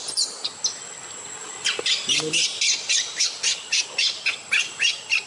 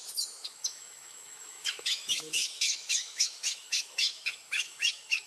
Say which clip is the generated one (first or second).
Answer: second